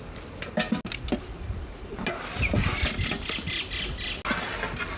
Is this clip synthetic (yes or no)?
no